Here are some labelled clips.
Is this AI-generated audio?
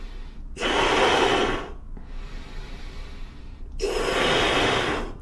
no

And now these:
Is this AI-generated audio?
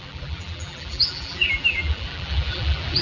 yes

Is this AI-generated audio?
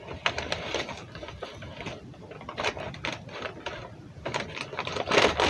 no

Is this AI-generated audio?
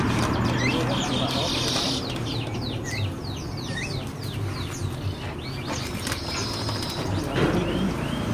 no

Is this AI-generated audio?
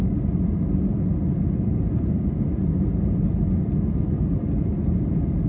no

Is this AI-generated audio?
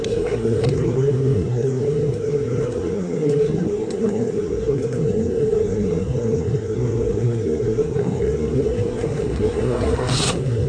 yes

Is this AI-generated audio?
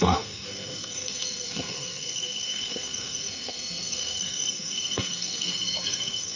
yes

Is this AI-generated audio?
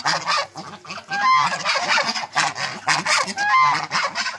no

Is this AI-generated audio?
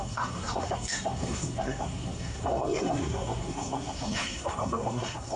yes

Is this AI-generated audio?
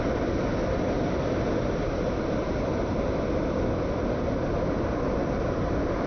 no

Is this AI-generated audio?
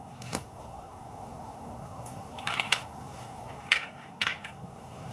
yes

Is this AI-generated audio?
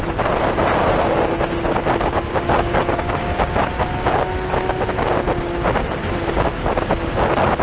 no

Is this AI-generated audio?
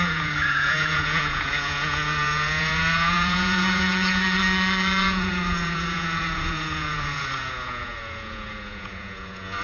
yes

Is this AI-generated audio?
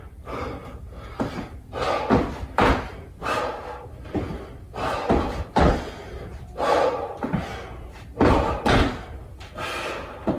no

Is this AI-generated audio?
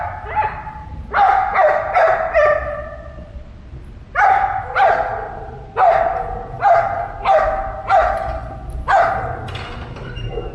no